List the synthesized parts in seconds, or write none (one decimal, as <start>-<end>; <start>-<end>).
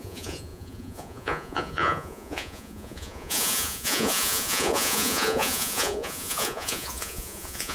0.0-7.7